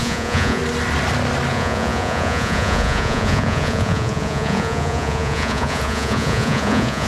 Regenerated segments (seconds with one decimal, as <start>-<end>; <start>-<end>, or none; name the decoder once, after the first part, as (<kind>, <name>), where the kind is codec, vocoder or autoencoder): 0.0-0.6 (vocoder, Vocos); 1.5-7.1